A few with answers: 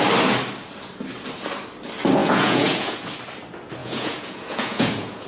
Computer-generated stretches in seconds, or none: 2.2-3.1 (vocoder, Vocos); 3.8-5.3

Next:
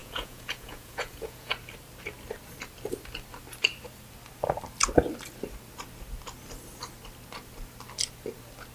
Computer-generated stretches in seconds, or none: 0.0-1.5 (vocoder, Vocos)